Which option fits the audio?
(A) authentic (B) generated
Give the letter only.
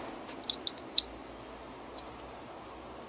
A